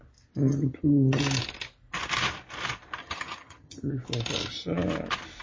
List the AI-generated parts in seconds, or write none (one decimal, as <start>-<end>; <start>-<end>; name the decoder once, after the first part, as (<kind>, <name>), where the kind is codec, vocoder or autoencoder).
0.4-1.2 (vocoder, HiFi-GAN); 3.0-3.9